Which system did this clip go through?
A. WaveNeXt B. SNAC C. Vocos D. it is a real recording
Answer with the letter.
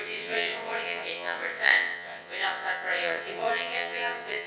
A